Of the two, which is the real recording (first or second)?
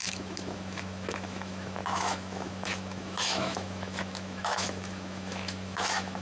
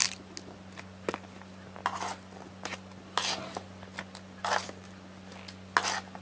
second